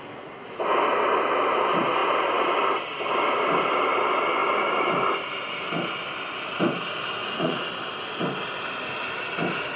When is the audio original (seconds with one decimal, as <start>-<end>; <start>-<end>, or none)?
0.0-7.2; 7.7-9.8